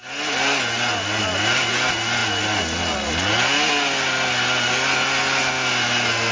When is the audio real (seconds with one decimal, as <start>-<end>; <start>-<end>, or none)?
0.0-6.3